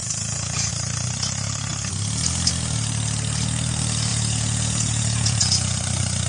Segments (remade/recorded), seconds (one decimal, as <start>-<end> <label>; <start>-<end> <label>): 0.0-0.7 remade; 0.7-4.1 recorded; 4.1-5.8 remade; 5.8-6.3 recorded